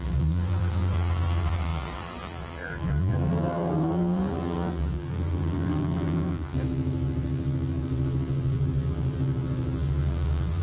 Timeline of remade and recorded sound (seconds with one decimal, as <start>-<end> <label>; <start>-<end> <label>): 0.0-10.6 remade